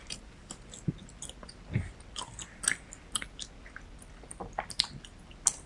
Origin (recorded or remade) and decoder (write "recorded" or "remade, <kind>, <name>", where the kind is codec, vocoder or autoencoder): recorded